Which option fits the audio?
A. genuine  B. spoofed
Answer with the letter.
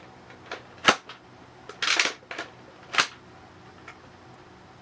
A